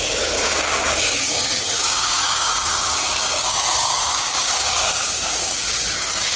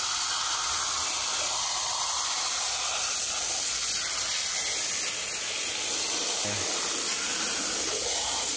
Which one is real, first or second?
second